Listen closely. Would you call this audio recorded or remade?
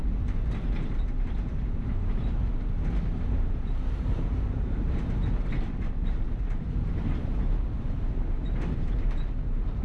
remade